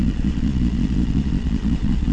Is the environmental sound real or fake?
fake